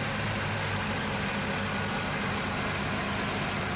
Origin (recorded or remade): recorded